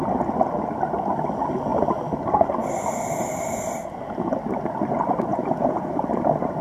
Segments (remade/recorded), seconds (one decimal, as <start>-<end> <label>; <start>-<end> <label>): 0.0-5.3 recorded; 5.3-5.9 remade; 5.9-6.6 recorded